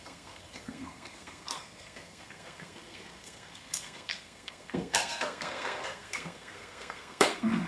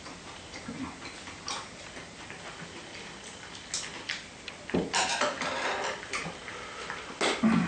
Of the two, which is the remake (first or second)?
first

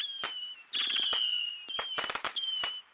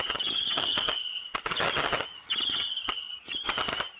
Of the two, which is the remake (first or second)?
second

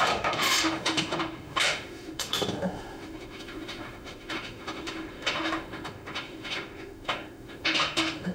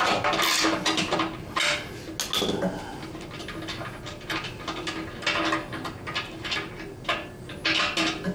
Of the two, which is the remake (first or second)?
first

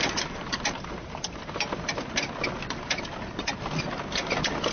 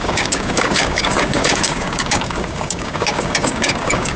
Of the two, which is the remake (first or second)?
second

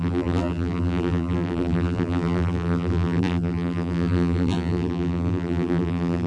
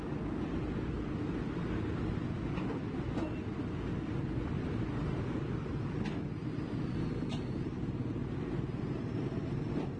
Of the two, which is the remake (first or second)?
first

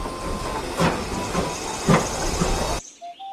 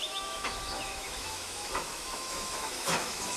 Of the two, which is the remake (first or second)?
second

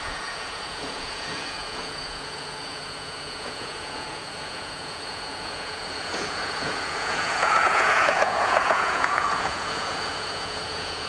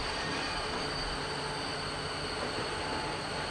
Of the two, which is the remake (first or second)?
first